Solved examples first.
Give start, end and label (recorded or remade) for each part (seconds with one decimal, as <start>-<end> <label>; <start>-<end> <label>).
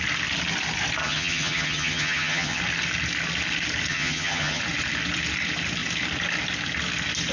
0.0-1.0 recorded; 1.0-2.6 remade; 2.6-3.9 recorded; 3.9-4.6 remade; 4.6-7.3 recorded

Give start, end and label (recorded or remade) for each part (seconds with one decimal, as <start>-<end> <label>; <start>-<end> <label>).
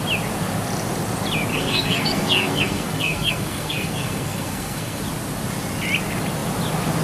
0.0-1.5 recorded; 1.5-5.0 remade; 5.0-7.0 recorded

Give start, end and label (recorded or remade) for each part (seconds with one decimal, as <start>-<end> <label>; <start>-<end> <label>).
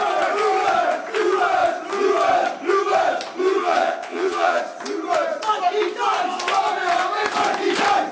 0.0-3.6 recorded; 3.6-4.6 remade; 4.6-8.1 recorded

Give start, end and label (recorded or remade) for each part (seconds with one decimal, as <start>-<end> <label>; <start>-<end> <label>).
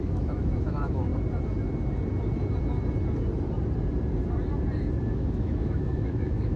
0.0-1.1 remade; 1.1-5.1 recorded; 5.1-6.6 remade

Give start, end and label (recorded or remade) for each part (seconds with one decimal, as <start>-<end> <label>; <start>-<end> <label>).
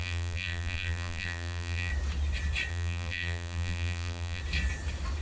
0.0-1.9 remade; 1.9-2.7 recorded; 2.7-4.4 remade; 4.4-5.2 recorded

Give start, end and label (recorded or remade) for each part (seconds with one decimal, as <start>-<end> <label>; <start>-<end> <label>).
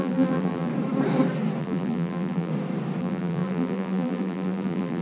0.0-0.7 remade; 0.7-1.6 recorded; 1.6-2.5 remade; 2.5-3.0 recorded; 3.0-5.0 remade